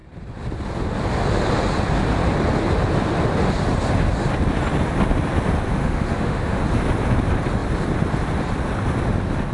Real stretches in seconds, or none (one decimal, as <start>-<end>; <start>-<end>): 0.0-5.8; 6.6-9.5